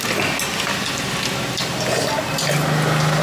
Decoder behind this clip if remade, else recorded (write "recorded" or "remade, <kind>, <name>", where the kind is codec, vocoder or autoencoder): recorded